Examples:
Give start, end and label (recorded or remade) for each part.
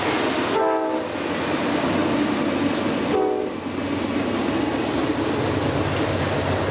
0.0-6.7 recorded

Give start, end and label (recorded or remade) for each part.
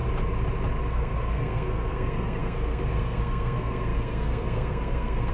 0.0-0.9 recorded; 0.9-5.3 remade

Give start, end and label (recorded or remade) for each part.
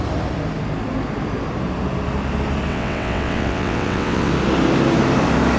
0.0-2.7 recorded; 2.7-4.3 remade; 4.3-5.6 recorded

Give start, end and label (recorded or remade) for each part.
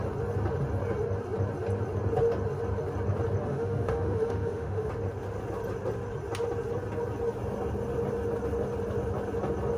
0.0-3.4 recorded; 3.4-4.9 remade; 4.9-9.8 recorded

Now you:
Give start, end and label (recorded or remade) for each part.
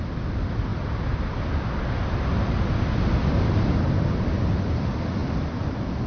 0.0-6.1 recorded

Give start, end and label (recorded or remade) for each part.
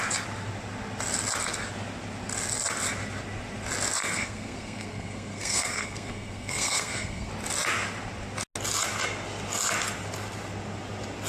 0.0-4.0 recorded; 4.0-7.3 remade; 7.3-11.3 recorded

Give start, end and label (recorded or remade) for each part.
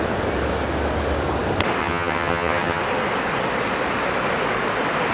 0.0-1.8 recorded; 1.8-2.8 remade; 2.8-5.1 recorded